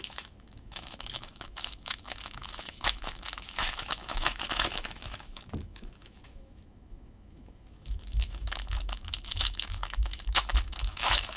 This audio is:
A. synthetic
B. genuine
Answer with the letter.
A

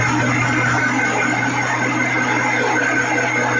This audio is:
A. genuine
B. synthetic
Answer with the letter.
A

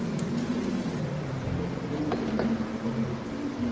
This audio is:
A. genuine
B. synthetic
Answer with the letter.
A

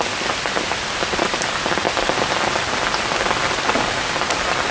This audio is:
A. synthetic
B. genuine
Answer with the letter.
B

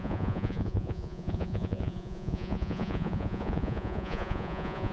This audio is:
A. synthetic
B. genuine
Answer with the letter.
A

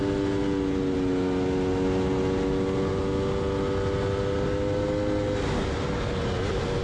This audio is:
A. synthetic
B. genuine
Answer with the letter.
B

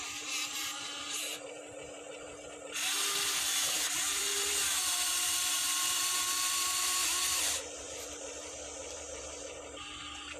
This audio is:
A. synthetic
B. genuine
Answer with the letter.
A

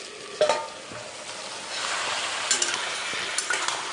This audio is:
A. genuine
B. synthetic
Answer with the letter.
A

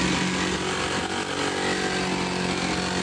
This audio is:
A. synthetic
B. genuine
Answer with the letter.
B